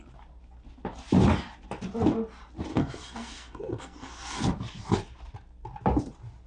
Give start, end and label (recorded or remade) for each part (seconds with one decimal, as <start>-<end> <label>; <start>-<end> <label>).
0.0-2.7 recorded; 2.7-4.5 remade; 4.5-6.5 recorded